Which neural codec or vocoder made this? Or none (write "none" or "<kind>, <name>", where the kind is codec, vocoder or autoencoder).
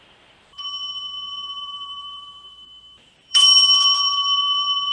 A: vocoder, BigVGAN v2